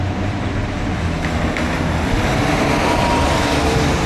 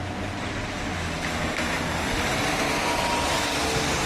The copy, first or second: first